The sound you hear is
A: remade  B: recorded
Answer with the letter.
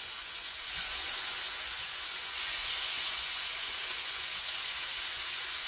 A